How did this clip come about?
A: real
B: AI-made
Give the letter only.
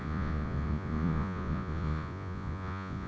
B